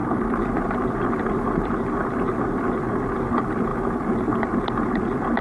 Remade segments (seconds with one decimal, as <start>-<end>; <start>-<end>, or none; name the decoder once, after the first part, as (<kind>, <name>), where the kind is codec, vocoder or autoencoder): none